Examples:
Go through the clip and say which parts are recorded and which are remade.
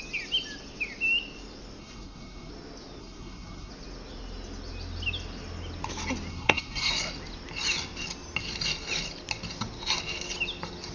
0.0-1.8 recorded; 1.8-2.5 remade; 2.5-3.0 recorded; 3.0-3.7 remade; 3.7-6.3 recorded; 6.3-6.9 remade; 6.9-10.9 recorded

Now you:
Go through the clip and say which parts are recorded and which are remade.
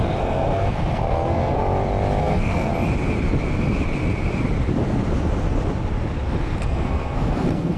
0.0-1.6 remade; 1.6-2.2 recorded; 2.2-2.7 remade; 2.7-6.4 recorded; 6.4-7.8 remade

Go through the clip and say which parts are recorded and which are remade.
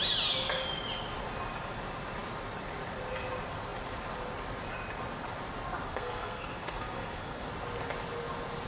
0.0-5.9 recorded; 5.9-7.5 remade; 7.5-8.7 recorded